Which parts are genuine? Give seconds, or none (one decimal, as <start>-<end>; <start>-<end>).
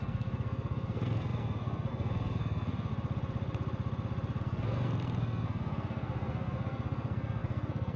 2.9-4.4